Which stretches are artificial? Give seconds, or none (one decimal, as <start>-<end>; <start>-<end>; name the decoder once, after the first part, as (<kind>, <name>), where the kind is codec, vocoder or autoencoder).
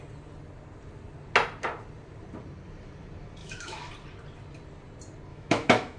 3.4-3.9 (autoencoder, DAC-VAE); 5.3-6.0